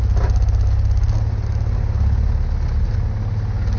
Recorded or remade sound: recorded